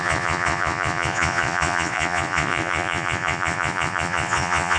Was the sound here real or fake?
fake